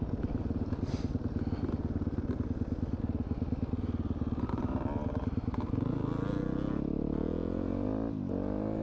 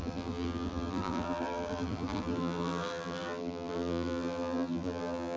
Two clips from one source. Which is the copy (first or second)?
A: second